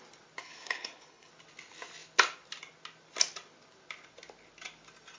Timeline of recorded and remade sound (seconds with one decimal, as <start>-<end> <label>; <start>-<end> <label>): 0.0-0.4 recorded; 0.4-1.3 remade; 1.3-5.2 recorded